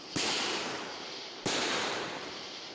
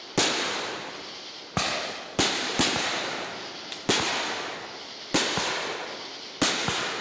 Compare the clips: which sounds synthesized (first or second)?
first